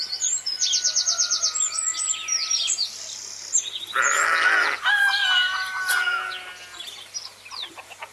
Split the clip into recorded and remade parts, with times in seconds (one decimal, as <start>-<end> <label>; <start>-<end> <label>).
0.0-8.1 recorded